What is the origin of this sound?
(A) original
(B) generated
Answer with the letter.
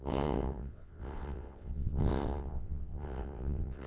B